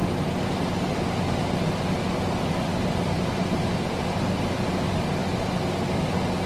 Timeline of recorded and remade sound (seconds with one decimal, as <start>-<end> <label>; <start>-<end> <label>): 0.0-1.1 recorded; 1.1-5.2 remade; 5.2-6.5 recorded